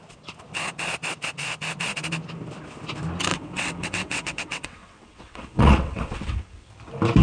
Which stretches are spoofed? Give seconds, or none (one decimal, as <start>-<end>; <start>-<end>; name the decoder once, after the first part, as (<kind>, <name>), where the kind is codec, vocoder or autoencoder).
3.3-6.7 (vocoder, WaveNeXt)